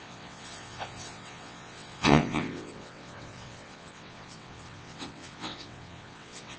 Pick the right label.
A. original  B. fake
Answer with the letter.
B